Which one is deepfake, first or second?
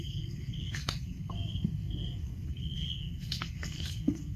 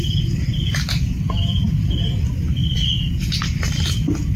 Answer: first